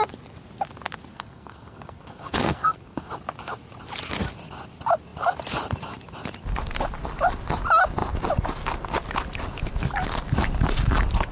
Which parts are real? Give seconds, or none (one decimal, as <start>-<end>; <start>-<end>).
0.0-1.1; 3.1-11.3